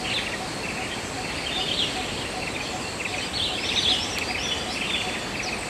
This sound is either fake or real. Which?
real